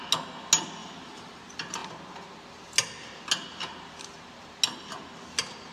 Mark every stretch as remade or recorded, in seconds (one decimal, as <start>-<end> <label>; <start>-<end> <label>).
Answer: 0.0-0.8 recorded; 0.8-1.4 remade; 1.4-5.7 recorded